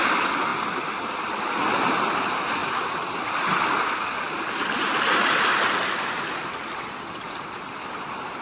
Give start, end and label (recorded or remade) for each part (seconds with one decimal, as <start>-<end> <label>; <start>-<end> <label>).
0.0-8.4 recorded